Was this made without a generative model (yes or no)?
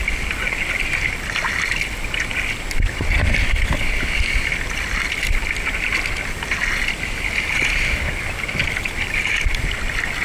yes